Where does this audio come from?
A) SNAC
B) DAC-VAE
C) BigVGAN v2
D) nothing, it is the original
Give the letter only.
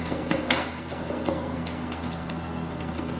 A